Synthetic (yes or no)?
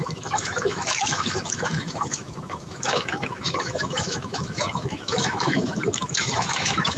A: yes